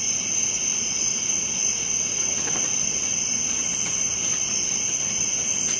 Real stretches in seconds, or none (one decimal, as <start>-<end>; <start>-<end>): 0.0-5.8